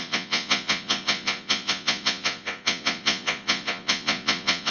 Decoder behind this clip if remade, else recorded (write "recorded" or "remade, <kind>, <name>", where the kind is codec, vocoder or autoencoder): remade, vocoder, Vocos